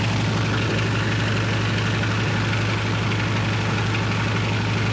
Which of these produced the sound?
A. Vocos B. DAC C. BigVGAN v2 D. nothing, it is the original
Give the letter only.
D